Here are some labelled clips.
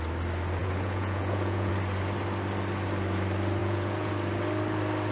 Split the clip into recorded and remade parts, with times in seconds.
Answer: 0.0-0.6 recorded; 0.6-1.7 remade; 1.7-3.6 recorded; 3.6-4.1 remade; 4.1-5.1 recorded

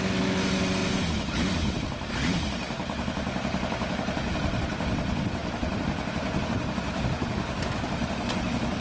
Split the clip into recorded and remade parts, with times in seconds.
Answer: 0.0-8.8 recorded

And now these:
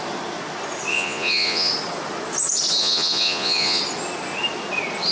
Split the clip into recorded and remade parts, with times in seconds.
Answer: 0.0-0.9 recorded; 0.9-1.7 remade; 1.7-2.8 recorded; 2.8-3.8 remade; 3.8-5.1 recorded

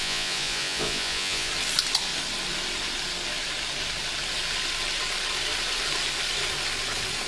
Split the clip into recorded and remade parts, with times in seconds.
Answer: 0.0-1.5 remade; 1.5-7.3 recorded

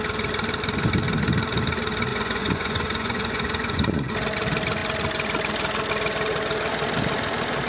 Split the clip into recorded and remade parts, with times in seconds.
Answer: 0.0-2.1 recorded; 2.1-4.1 remade; 4.1-7.7 recorded

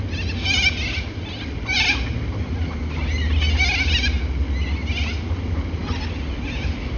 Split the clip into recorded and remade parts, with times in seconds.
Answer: 0.0-7.0 recorded

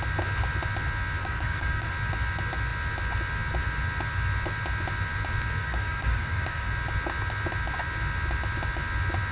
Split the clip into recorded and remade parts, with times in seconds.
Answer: 0.0-1.2 recorded; 1.2-1.9 remade; 1.9-5.6 recorded; 5.6-6.7 remade; 6.7-9.3 recorded

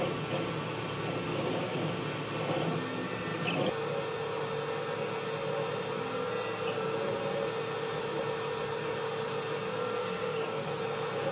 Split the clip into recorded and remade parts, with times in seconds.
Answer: 0.0-1.3 recorded; 1.3-2.0 remade; 2.0-10.0 recorded; 10.0-10.8 remade; 10.8-11.3 recorded